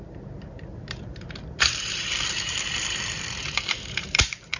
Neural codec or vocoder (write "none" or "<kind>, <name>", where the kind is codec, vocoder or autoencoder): vocoder, BigVGAN v2